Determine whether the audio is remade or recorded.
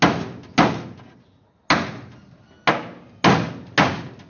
recorded